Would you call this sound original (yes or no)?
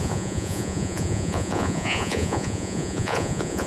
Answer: no